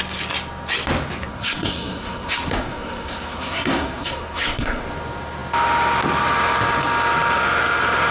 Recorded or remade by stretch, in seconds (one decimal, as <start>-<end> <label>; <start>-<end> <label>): 0.0-1.3 recorded; 1.3-4.8 remade; 4.8-8.1 recorded